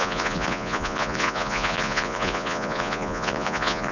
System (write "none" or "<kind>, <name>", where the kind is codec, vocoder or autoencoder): vocoder, Vocos